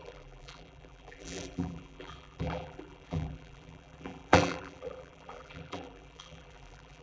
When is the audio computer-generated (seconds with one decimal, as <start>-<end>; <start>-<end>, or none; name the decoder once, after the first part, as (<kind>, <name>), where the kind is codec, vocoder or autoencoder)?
0.0-7.0 (vocoder, BigVGAN v2)